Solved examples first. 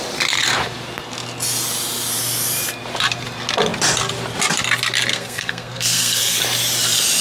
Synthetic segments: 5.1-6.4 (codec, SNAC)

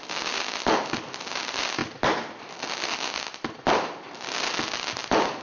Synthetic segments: none